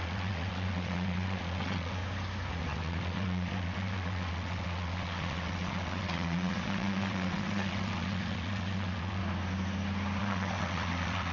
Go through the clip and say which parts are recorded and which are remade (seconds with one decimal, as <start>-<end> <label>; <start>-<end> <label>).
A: 0.0-2.0 remade; 2.0-2.5 recorded; 2.5-9.2 remade; 9.2-10.2 recorded; 10.2-11.3 remade

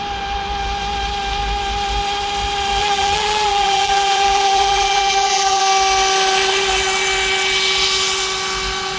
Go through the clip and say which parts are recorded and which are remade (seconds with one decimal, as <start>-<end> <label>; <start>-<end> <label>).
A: 0.0-2.8 recorded; 2.8-5.6 remade; 5.6-9.0 recorded

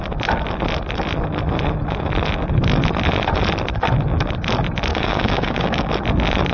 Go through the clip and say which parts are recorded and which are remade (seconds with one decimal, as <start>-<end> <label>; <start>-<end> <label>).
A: 0.0-4.9 recorded; 4.9-5.9 remade; 5.9-6.5 recorded

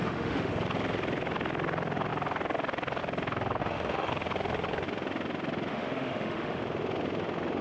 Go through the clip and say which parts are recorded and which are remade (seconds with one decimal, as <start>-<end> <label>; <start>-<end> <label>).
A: 0.0-0.5 remade; 0.5-3.6 recorded; 3.6-4.1 remade; 4.1-5.7 recorded; 5.7-6.6 remade; 6.6-7.6 recorded

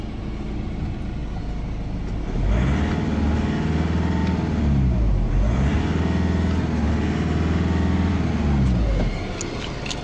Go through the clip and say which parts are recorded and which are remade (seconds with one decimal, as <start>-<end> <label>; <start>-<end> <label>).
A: 0.0-10.0 recorded